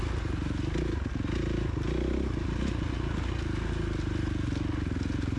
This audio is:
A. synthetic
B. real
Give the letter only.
B